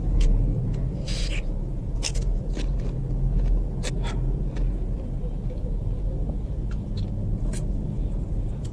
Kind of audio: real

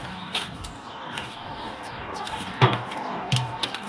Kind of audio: fake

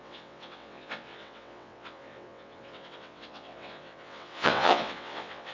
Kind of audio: fake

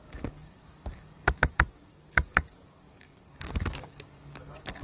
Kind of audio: fake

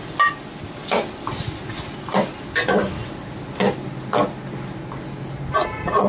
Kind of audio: real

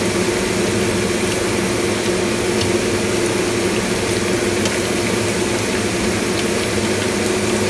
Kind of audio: real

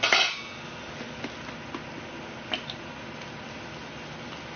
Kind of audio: real